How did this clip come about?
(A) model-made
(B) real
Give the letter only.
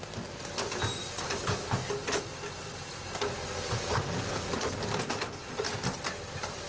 B